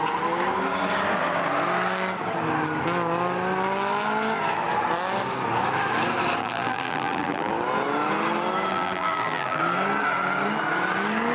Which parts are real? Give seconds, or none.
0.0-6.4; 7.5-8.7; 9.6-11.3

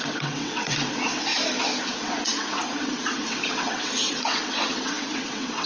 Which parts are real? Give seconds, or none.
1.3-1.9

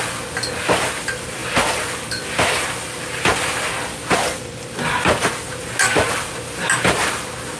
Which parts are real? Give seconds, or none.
0.0-7.6

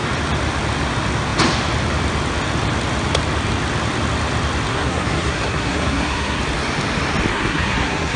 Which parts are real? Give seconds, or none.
0.0-4.7; 6.4-7.3

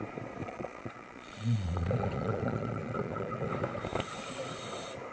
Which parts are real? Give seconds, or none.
0.0-0.4; 3.5-5.1

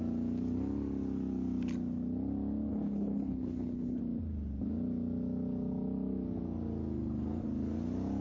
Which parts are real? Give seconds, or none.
0.0-2.7; 4.0-8.2

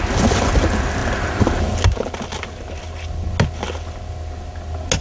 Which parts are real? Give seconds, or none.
0.0-5.0

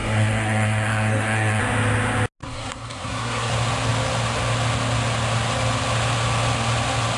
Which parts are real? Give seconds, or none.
1.6-2.4; 3.5-7.2